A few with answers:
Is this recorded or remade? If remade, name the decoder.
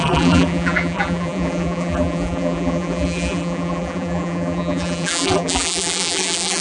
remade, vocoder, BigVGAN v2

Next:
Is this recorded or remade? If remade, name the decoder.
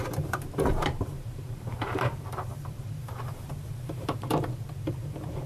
remade, vocoder, BigVGAN v2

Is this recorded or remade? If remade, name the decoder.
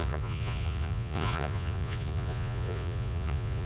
remade, vocoder, Vocos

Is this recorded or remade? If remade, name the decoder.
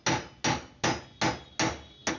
recorded